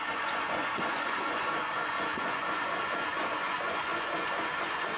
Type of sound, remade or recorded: remade